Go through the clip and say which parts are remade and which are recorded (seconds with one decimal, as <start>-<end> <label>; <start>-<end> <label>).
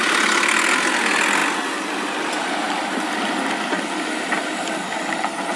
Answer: 0.0-5.6 recorded